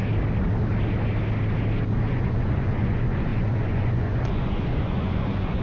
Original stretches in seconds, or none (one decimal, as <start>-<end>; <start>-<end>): 0.0-2.1